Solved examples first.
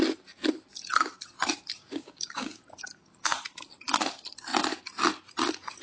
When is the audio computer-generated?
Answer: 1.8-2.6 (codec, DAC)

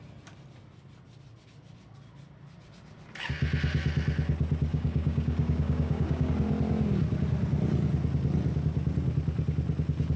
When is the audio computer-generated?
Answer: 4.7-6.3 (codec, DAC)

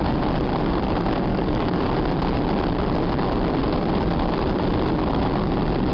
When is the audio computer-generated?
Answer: 1.3-1.8 (codec, DAC)

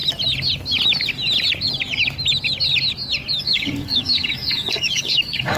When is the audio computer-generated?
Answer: 3.4-5.6 (codec, DAC)

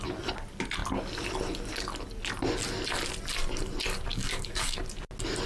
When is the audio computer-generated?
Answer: 4.1-4.8 (codec, DAC)

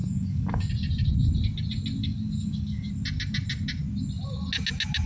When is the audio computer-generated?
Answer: 0.0-0.7 (codec, DAC); 2.0-2.9